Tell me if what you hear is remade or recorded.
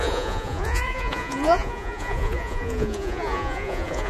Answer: remade